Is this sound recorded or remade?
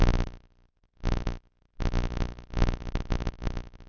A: remade